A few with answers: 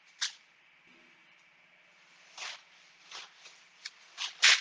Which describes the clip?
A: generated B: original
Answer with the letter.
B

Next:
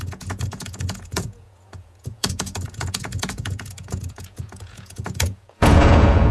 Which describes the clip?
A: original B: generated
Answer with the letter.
B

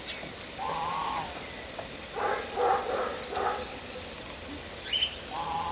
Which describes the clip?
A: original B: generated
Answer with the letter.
A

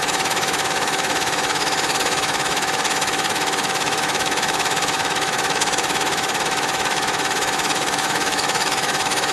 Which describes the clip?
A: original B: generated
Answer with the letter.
B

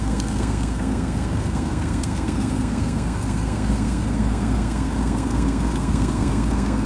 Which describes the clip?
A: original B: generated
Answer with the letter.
B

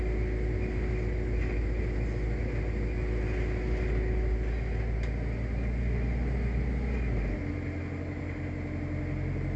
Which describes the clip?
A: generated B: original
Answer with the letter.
B